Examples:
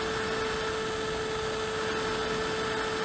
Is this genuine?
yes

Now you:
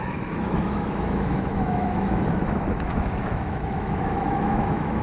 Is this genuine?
no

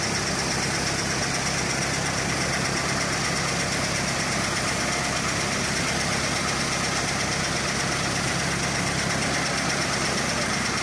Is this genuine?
yes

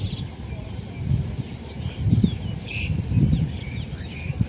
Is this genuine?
yes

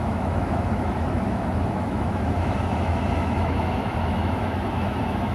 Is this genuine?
no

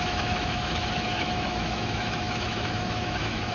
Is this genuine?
no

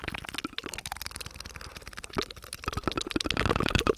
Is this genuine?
yes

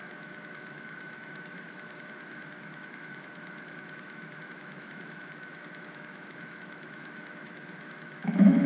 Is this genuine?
no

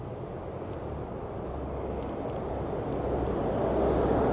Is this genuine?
yes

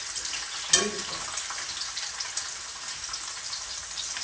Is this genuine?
yes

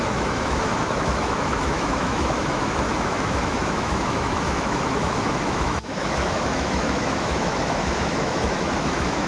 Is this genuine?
no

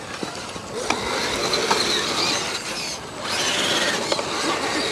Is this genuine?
yes